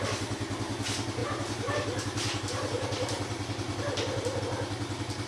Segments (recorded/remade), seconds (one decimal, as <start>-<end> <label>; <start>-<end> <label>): 0.0-1.2 recorded; 1.2-4.4 remade; 4.4-5.3 recorded